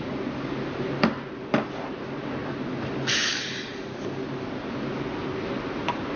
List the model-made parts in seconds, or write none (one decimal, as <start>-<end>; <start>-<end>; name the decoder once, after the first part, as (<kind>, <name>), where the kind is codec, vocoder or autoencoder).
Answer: none